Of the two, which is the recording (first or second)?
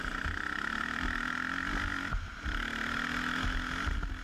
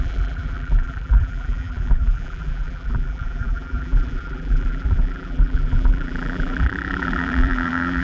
first